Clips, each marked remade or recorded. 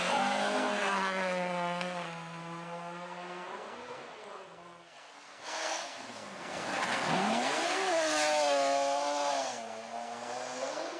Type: remade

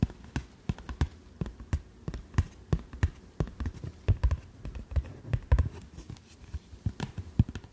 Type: recorded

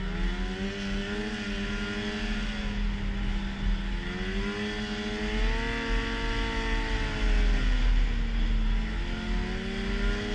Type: recorded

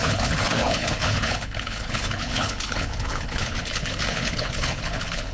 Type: remade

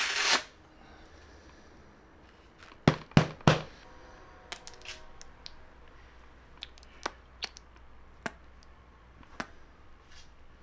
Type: recorded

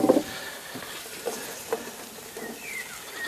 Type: recorded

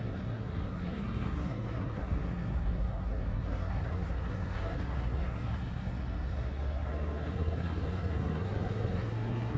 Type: remade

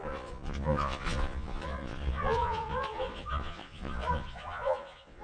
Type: remade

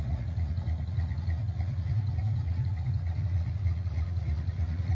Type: remade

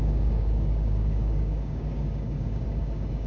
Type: remade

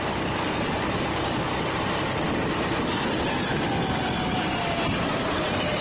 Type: recorded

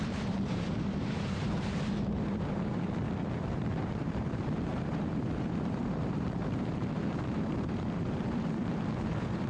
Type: remade